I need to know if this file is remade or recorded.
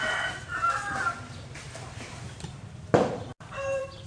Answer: remade